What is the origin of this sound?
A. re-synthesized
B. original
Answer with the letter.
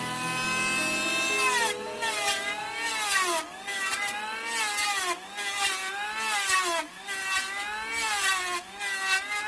B